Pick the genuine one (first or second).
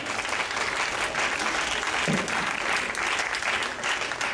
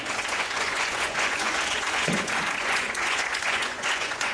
first